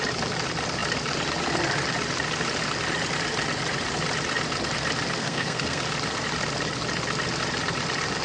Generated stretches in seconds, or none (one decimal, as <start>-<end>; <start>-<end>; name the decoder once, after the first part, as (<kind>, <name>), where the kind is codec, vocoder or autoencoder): 5.2-5.8 (codec, SNAC)

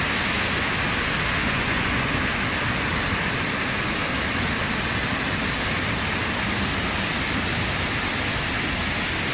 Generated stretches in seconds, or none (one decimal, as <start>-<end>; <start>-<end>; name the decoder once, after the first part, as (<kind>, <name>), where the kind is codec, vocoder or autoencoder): 1.4-2.1 (vocoder, Vocos)